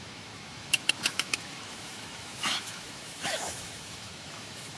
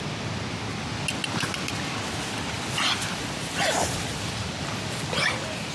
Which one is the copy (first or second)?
first